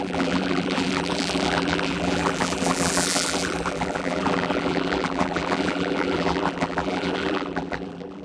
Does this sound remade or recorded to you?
remade